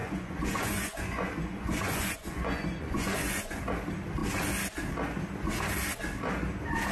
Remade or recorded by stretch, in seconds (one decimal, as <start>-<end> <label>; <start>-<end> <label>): 0.0-3.6 remade; 3.6-6.9 recorded